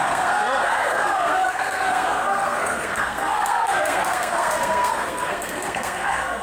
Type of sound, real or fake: fake